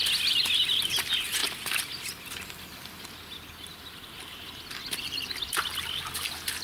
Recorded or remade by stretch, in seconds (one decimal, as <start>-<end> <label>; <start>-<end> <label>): 0.0-6.6 recorded